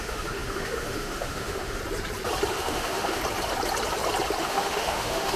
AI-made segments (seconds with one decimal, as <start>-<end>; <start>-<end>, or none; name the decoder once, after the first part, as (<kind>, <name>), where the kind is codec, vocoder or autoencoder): 0.0-1.8 (autoencoder, DAC-VAE); 2.5-3.2; 4.4-5.4